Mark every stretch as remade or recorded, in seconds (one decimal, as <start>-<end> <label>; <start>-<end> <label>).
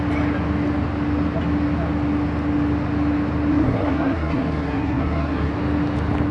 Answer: 0.0-3.5 recorded; 3.5-5.5 remade; 5.5-6.3 recorded